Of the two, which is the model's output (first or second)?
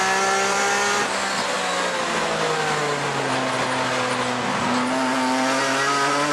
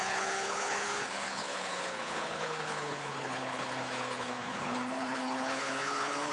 second